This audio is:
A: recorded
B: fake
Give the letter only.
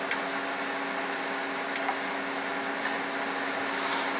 A